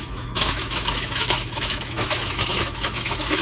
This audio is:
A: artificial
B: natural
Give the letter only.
A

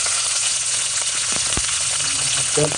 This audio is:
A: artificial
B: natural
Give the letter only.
A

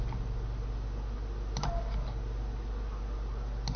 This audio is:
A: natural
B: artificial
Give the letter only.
A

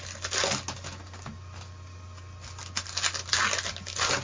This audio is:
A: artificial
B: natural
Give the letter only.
B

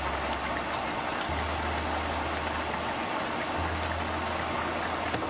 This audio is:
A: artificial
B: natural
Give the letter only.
B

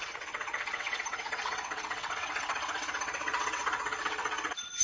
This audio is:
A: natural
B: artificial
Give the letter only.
B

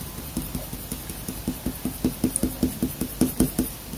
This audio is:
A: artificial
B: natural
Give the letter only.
A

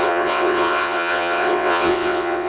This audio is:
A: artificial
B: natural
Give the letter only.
A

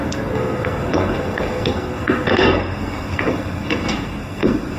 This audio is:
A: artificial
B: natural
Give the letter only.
A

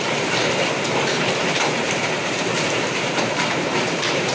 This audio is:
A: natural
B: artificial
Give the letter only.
B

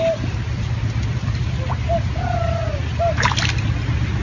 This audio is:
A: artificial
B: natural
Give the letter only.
B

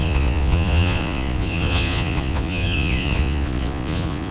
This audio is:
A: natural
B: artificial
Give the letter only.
B